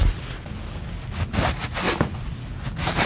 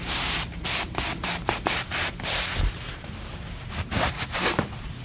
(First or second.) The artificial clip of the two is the second